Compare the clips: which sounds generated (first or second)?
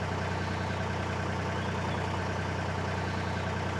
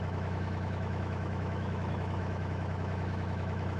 second